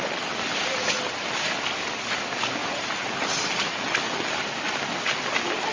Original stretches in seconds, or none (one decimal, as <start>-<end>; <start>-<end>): 0.0-2.6; 3.3-5.7